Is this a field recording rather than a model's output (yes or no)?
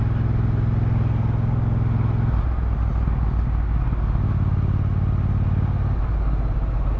yes